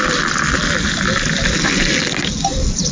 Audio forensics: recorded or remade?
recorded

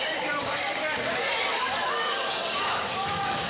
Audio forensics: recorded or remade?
remade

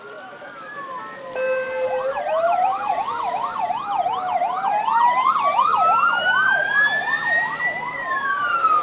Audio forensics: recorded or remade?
recorded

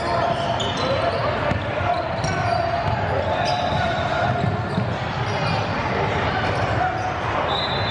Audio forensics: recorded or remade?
recorded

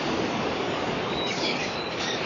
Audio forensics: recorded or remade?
remade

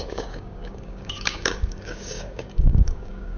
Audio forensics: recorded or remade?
remade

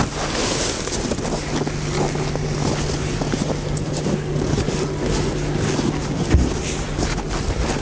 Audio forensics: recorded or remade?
recorded